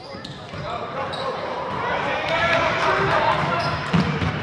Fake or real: fake